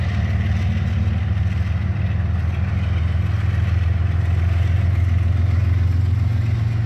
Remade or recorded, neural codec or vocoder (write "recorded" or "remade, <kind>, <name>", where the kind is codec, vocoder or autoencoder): recorded